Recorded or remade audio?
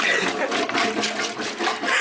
recorded